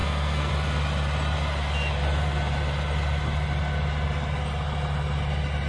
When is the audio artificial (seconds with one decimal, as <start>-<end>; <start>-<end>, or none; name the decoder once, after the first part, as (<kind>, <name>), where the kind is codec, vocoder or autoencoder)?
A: 0.0-0.5 (codec, SNAC)